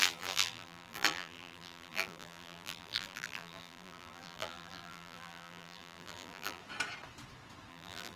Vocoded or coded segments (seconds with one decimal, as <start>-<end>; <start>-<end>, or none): 0.0-6.6; 7.7-8.2